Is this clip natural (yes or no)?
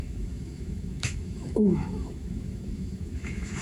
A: no